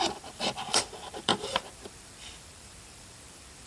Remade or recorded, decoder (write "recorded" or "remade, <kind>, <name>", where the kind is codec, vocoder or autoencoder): remade, vocoder, BigVGAN v2